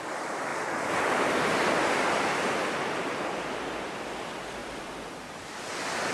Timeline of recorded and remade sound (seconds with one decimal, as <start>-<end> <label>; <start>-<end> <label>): 0.0-6.1 recorded